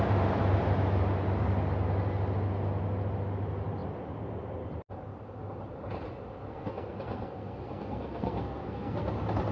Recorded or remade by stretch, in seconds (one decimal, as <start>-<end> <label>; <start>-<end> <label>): 0.0-6.5 recorded; 6.5-9.1 remade; 9.1-9.5 recorded